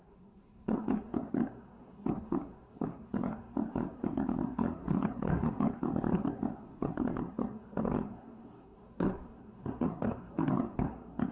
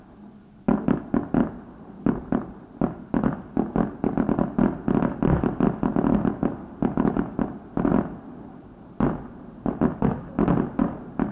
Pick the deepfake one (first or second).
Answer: first